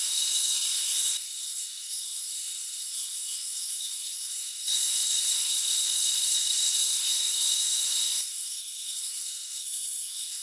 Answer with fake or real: fake